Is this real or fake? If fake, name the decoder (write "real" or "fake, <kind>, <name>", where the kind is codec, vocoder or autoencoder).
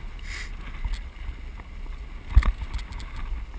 real